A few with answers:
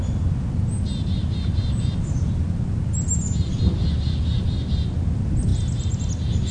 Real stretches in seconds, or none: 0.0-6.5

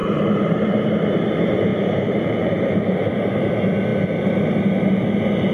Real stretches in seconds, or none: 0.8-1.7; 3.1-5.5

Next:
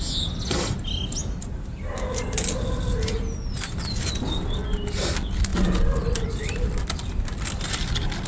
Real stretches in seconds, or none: 0.0-8.3